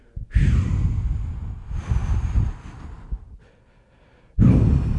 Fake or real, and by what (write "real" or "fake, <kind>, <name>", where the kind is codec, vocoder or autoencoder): real